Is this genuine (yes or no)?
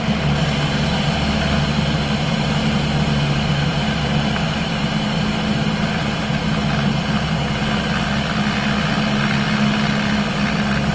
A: yes